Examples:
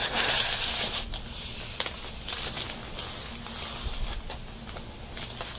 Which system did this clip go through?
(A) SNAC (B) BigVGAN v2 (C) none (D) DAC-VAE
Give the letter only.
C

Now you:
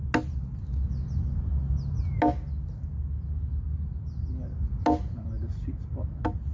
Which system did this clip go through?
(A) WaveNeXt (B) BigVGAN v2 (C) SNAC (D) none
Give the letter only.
D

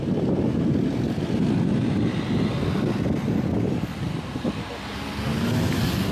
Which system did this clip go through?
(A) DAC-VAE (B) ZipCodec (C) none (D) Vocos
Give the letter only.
C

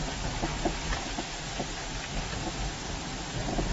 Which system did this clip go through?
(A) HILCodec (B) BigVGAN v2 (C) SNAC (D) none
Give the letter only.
D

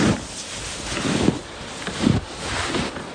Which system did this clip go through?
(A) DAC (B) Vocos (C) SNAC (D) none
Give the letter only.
D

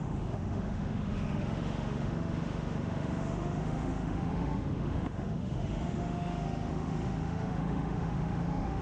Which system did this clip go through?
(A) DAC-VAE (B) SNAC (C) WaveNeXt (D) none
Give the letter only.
A